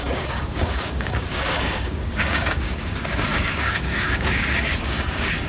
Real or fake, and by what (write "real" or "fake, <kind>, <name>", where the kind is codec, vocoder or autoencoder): fake, codec, DAC